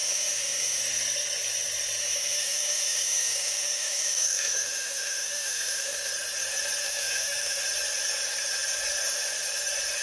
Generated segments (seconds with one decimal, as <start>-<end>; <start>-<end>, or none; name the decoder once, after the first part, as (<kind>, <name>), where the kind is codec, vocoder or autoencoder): 0.0-0.8 (autoencoder, DAC-VAE); 2.0-6.1; 6.8-7.6